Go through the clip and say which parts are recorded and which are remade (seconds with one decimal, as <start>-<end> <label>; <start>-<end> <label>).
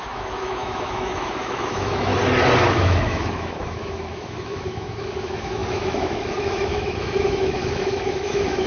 0.0-2.1 remade; 2.1-2.7 recorded; 2.7-8.7 remade